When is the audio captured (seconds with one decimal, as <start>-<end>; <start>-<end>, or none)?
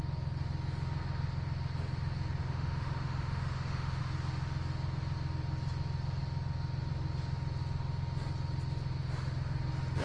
0.0-2.4; 4.0-10.0